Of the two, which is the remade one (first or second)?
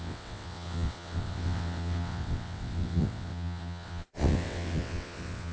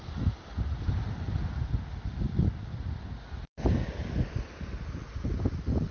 first